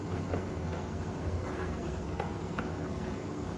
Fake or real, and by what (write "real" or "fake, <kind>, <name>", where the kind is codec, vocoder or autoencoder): fake, codec, SNAC